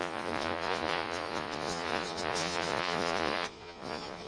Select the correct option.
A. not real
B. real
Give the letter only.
A